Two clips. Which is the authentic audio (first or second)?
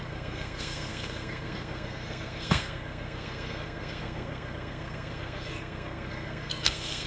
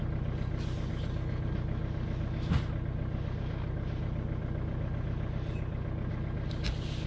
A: second